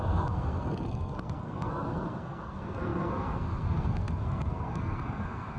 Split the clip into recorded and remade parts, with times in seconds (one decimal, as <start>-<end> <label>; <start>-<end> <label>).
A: 0.0-5.6 remade